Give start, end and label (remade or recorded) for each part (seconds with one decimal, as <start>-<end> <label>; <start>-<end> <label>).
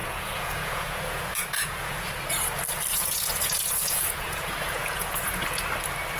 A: 0.0-2.1 remade; 2.1-2.9 recorded; 2.9-5.7 remade; 5.7-6.2 recorded